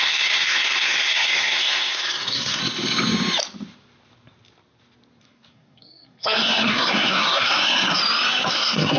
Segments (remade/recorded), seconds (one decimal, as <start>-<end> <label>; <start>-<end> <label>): 0.0-2.6 remade; 2.6-5.2 recorded; 5.2-8.0 remade; 8.0-8.5 recorded; 8.5-9.0 remade